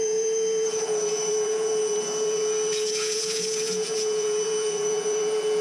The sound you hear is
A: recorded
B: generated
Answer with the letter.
B